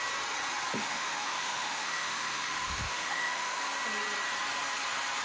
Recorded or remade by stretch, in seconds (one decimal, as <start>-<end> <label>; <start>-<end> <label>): 0.0-0.8 recorded; 0.8-3.6 remade; 3.6-5.2 recorded